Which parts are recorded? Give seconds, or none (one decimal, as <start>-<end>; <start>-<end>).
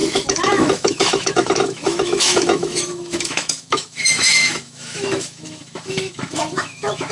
none